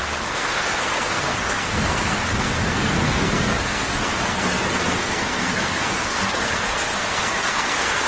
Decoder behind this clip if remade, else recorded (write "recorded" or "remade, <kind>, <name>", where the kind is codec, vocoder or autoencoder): remade, codec, SNAC